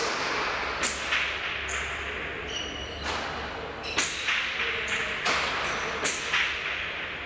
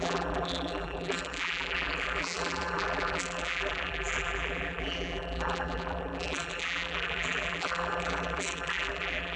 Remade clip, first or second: second